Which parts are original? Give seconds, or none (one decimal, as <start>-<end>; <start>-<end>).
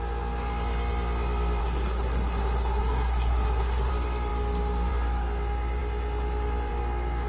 0.0-1.6; 3.9-7.3